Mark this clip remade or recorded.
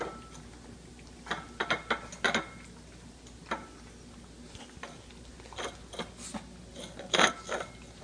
recorded